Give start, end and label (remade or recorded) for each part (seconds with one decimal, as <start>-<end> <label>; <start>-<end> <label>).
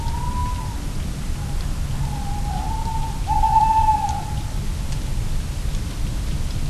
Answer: 0.0-6.7 recorded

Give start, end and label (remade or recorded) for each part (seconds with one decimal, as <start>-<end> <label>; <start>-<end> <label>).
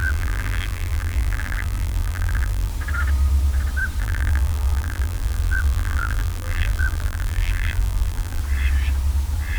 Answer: 0.0-2.7 remade; 2.7-4.0 recorded; 4.0-8.4 remade; 8.4-9.6 recorded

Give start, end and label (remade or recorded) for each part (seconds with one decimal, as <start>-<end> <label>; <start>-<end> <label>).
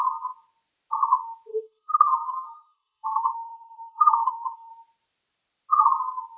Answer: 0.0-1.5 recorded; 1.5-4.7 remade; 4.7-6.4 recorded